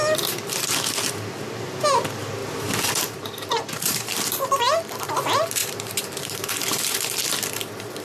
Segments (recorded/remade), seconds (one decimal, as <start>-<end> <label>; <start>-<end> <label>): 0.0-2.4 recorded; 2.4-4.6 remade; 4.6-5.6 recorded; 5.6-7.2 remade; 7.2-8.0 recorded